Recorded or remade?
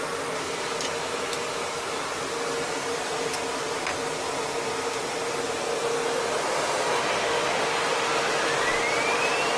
recorded